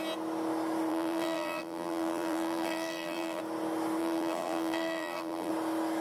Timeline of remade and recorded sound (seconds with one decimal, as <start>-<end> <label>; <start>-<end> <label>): 0.0-0.9 recorded; 0.9-3.4 remade; 3.4-4.0 recorded; 4.0-5.5 remade; 5.5-6.0 recorded